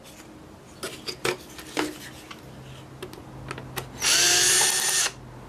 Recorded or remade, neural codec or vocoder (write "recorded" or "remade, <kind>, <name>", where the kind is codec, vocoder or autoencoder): recorded